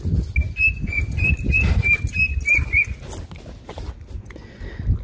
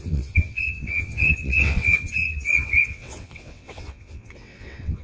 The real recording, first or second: first